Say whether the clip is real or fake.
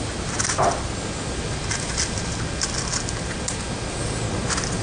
real